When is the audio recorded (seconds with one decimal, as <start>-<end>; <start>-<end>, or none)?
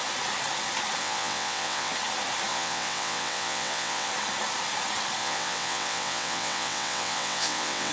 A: 0.0-1.0; 1.9-2.5; 4.1-5.2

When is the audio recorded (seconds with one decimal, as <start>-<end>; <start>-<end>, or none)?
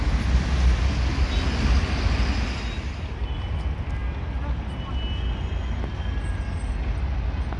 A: 0.0-7.6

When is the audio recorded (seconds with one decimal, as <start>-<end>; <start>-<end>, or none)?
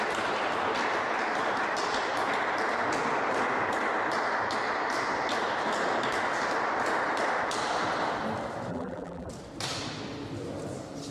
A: 0.0-8.7; 9.3-11.1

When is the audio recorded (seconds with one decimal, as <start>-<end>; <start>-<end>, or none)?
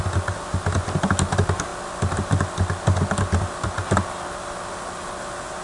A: 0.0-5.6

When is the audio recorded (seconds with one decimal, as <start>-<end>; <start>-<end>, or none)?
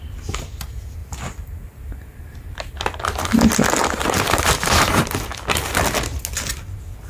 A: 0.0-3.8; 5.0-7.1